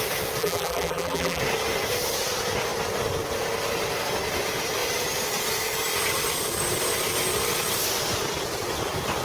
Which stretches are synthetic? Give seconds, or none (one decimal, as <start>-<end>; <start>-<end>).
0.4-1.4